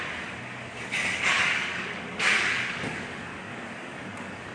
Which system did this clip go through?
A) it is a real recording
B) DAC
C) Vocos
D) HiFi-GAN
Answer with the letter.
B